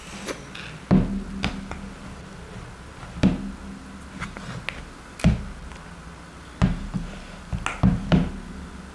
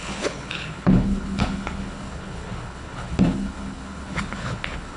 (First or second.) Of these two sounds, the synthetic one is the second